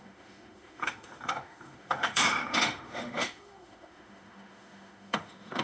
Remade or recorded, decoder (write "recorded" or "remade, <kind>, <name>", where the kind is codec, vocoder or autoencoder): remade, autoencoder, DAC-VAE